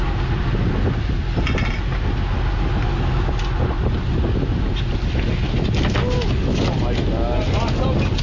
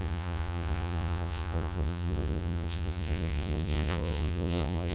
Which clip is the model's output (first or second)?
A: second